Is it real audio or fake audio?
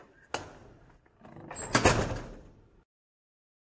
real